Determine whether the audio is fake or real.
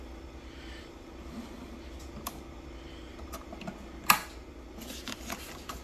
real